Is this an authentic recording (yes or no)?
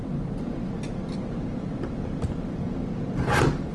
yes